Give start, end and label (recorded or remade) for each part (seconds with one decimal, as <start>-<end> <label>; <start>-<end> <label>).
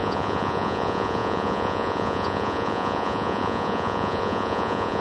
0.0-5.0 remade